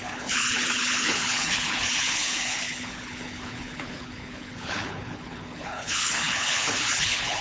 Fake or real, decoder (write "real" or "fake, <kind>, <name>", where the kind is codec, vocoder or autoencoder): fake, codec, HILCodec